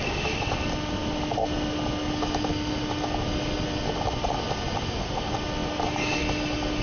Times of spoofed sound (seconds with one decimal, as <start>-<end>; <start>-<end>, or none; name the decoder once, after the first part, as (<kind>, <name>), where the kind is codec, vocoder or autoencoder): none